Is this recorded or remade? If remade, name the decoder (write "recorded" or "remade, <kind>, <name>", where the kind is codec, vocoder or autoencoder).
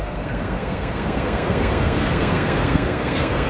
remade, codec, SNAC